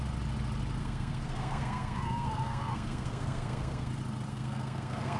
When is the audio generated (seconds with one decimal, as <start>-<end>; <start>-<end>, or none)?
0.8-3.9; 4.3-5.2